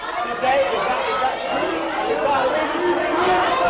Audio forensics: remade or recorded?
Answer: recorded